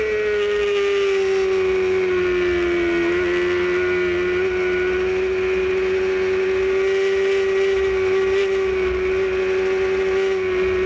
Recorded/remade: recorded